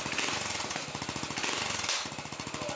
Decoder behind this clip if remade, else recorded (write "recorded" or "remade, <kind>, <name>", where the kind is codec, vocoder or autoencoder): recorded